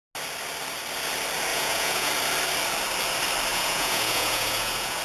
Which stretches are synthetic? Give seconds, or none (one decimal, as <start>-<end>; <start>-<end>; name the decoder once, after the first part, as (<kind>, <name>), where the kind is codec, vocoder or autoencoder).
1.5-2.1 (vocoder, Vocos); 3.5-5.0